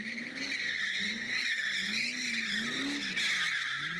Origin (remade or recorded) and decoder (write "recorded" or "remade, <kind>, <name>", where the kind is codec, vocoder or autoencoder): recorded